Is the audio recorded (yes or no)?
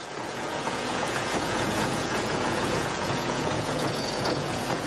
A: no